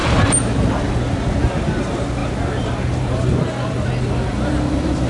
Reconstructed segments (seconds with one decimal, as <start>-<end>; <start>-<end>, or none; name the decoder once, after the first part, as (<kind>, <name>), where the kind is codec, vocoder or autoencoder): 0.0-0.8 (vocoder, BigVGAN v2); 2.2-3.3